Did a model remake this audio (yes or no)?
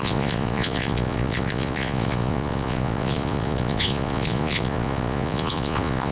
yes